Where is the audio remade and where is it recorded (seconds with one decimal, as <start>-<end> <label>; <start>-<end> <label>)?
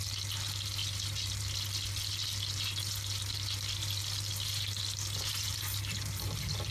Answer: 0.0-6.7 recorded